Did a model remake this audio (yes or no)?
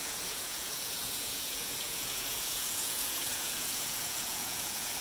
yes